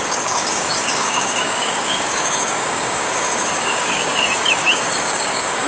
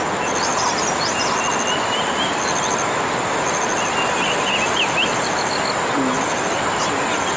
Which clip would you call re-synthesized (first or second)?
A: first